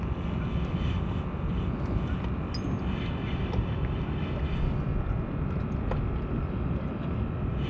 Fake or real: real